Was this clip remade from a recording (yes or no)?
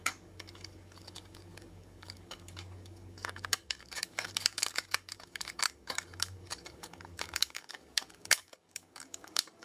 yes